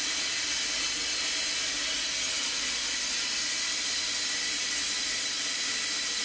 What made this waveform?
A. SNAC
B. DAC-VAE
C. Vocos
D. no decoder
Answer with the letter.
D